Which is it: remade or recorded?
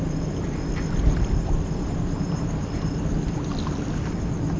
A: recorded